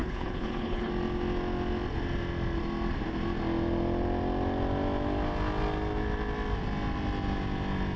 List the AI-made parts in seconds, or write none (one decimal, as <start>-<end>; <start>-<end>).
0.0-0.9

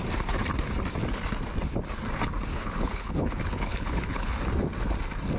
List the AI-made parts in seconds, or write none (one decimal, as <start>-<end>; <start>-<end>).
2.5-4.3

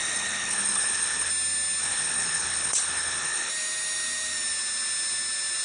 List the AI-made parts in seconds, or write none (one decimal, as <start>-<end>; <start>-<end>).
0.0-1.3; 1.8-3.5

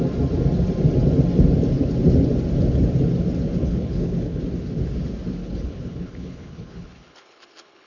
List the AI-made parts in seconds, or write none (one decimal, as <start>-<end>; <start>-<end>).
3.6-4.4; 5.4-7.9

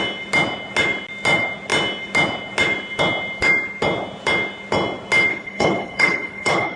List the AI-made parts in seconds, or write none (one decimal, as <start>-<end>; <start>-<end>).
5.3-6.8

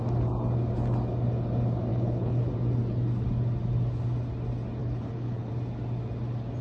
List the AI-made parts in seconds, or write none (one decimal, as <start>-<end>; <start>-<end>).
1.9-2.5; 4.8-5.5